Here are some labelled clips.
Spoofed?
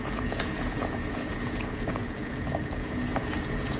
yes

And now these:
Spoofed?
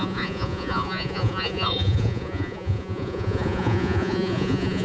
yes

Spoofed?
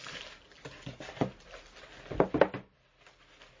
no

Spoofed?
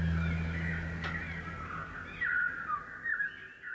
no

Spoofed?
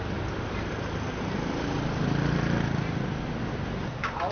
no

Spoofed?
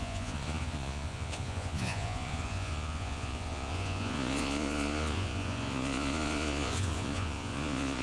yes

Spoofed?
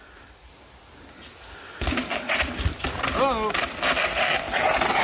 no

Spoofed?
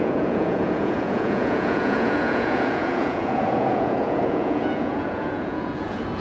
yes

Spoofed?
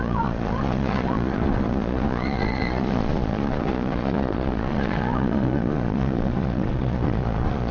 yes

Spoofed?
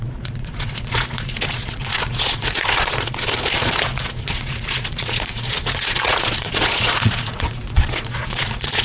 yes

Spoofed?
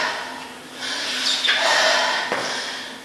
no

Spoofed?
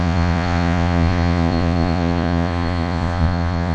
yes